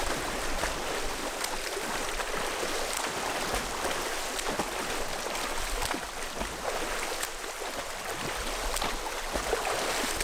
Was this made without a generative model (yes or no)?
yes